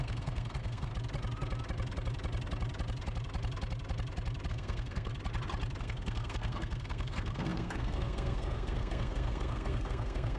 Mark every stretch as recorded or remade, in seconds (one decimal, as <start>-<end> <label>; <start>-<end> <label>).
0.0-0.9 remade; 0.9-4.5 recorded; 4.5-5.1 remade; 5.1-5.8 recorded; 5.8-10.4 remade